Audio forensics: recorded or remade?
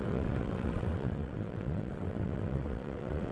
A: remade